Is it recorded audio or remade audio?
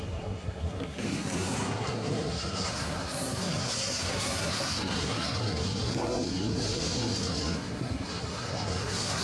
remade